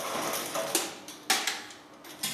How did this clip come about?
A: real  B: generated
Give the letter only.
A